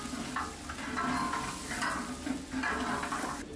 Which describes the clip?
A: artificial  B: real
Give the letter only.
B